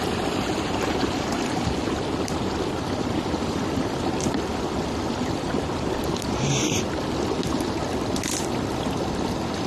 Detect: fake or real real